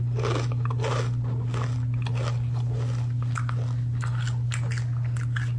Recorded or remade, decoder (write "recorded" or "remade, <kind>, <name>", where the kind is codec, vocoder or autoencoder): recorded